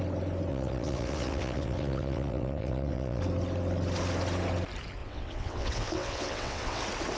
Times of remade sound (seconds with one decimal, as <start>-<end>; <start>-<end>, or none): 0.5-3.2; 5.0-6.8